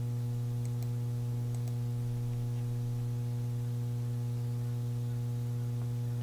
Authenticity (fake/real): real